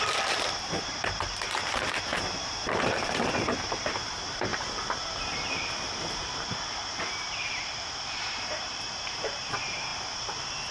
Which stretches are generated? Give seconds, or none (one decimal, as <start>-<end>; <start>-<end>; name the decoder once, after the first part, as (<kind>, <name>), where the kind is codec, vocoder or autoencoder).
0.0-4.5 (vocoder, BigVGAN v2); 5.9-10.7